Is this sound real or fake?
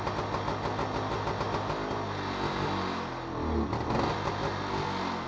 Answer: real